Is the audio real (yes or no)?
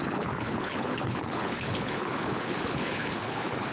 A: no